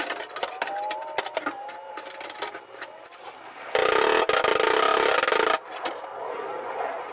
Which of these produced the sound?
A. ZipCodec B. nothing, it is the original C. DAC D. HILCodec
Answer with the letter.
B